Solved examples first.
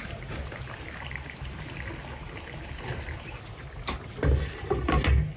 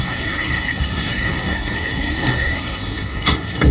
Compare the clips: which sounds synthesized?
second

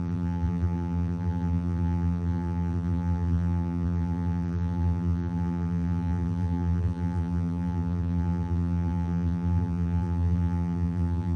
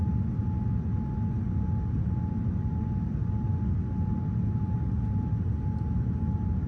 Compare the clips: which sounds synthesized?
first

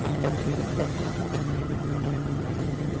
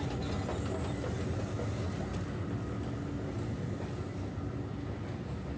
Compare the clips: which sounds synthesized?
first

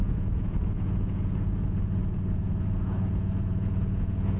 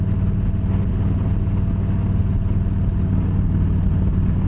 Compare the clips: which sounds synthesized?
first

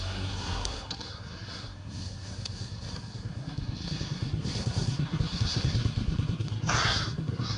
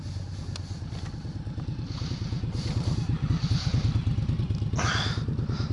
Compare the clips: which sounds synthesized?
first